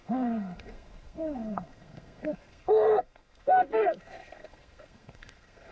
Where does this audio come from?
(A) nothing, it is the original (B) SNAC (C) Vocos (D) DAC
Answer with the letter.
B